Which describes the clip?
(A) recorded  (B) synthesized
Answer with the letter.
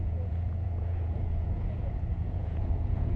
B